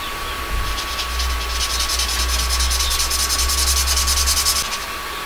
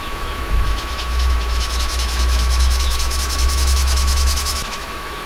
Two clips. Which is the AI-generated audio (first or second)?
second